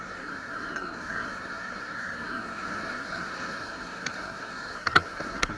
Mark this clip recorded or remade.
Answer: remade